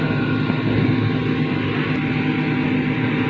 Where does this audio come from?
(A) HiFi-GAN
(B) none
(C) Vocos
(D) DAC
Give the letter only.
B